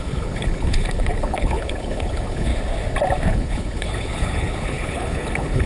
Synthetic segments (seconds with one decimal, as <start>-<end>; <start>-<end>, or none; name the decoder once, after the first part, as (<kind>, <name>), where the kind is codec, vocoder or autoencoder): 0.0-2.5 (codec, HILCodec); 3.3-5.7